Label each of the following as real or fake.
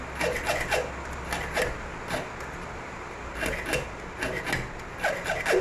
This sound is real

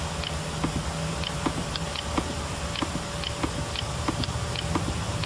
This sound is real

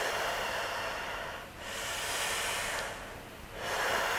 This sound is real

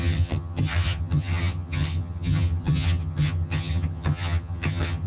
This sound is fake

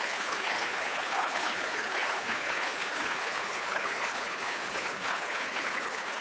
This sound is fake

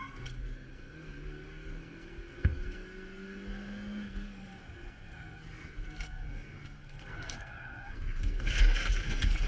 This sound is fake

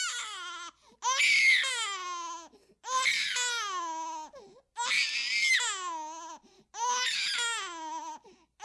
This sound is real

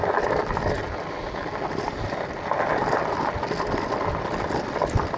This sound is real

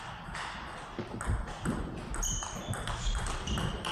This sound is real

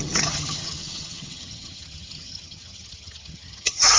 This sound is fake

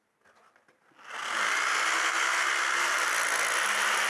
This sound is real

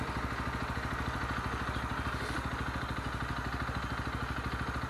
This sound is real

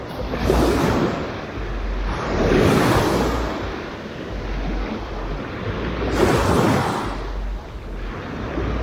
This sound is real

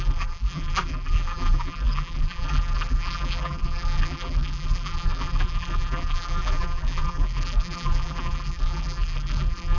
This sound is fake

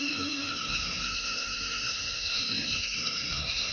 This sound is fake